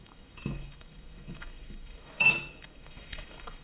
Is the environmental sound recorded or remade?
remade